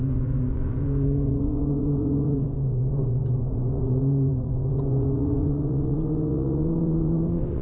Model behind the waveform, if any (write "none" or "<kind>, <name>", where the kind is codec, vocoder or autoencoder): vocoder, Vocos